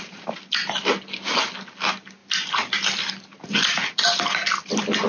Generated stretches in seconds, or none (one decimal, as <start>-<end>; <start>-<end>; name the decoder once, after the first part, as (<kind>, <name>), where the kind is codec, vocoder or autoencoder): none